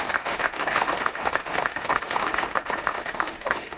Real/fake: fake